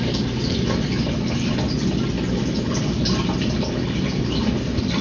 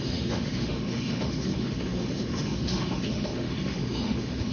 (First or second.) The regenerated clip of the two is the second